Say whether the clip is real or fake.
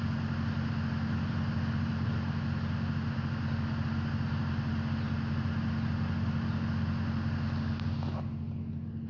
real